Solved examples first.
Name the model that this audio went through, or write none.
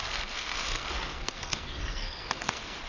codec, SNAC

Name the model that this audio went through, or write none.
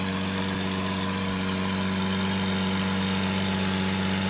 none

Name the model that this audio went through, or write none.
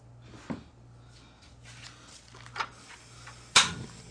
none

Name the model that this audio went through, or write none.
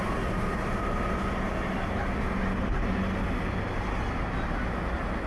none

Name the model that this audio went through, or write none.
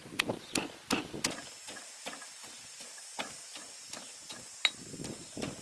none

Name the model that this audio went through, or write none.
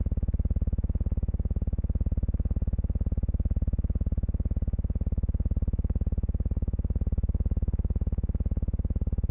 none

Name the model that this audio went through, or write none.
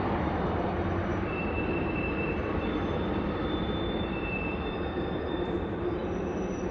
vocoder, BigVGAN v2